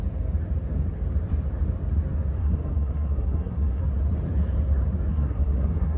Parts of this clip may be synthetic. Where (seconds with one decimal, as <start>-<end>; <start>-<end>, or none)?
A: 2.4-3.8; 5.1-6.0